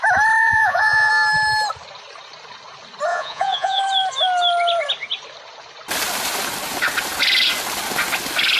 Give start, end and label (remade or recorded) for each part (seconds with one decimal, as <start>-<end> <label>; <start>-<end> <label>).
0.0-0.4 recorded; 0.4-1.1 remade; 1.1-3.1 recorded; 3.1-3.8 remade; 3.8-8.6 recorded